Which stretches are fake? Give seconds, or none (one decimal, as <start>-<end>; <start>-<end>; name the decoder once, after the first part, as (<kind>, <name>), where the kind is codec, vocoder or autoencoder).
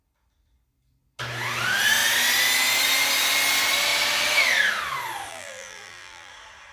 5.3-6.3 (vocoder, BigVGAN v2)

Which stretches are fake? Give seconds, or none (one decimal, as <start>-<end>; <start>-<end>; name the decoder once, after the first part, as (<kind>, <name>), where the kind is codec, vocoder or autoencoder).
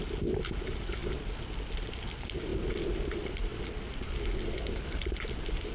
none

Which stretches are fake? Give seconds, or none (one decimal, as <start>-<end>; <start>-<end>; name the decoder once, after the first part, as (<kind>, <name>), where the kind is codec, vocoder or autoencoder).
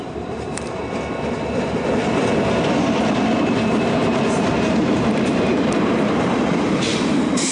0.0-0.8 (vocoder, BigVGAN v2); 3.4-7.5